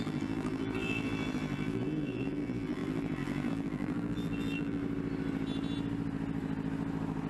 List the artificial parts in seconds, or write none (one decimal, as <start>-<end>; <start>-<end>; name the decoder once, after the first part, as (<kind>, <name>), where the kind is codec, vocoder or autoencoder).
0.0-4.8 (vocoder, BigVGAN v2)